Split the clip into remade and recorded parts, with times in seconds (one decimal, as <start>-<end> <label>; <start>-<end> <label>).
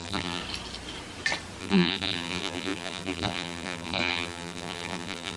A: 0.0-0.4 remade; 0.4-1.6 recorded; 1.6-5.4 remade